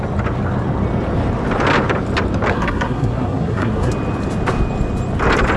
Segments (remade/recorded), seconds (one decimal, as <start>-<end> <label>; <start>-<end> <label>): 0.0-2.5 recorded; 2.5-3.9 remade; 3.9-5.6 recorded